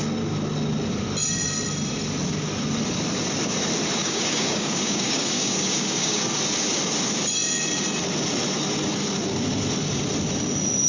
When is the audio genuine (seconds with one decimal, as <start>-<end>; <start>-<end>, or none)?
0.0-4.0; 6.2-10.9